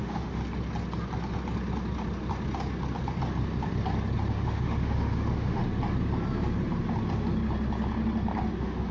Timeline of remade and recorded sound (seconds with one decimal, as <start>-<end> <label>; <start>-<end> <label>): 0.0-0.4 remade; 0.4-4.3 recorded; 4.3-5.6 remade; 5.6-8.5 recorded; 8.5-8.9 remade